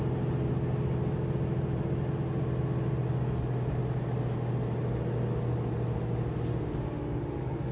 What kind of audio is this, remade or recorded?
recorded